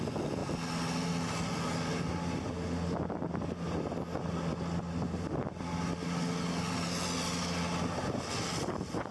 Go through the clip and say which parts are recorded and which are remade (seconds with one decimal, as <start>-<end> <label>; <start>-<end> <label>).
0.0-9.1 recorded